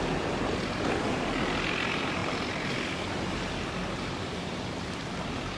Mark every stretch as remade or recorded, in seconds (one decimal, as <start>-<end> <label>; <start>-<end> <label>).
0.0-5.6 remade